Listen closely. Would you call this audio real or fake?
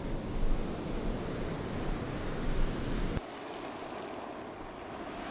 real